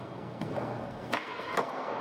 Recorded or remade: remade